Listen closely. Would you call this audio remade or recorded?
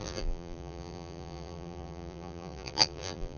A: remade